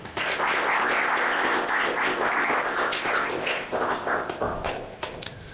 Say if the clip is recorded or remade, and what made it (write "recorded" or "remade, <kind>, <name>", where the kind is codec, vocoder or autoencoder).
remade, codec, ZipCodec